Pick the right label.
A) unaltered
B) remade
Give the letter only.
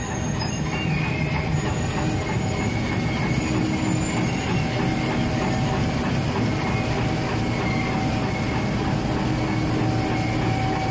A